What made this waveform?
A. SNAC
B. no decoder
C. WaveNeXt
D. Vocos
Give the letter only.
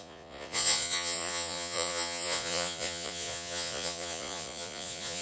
D